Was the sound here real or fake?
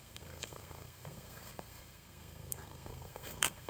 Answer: fake